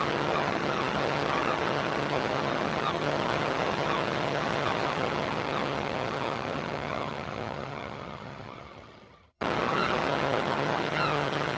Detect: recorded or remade remade